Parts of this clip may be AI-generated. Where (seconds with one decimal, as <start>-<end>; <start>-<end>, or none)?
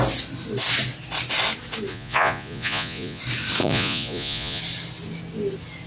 1.9-3.2; 3.6-4.6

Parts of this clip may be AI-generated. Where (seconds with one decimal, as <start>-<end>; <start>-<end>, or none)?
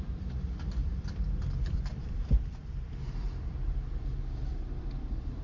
0.8-4.0; 4.5-5.4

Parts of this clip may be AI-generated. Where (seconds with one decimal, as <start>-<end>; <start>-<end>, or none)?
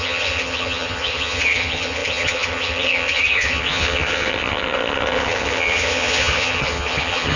0.0-7.4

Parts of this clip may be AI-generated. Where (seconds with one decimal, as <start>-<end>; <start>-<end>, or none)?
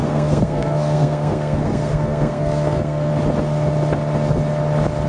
0.0-3.1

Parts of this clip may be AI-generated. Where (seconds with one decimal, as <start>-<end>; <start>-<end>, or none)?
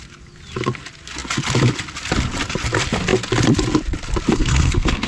4.3-5.1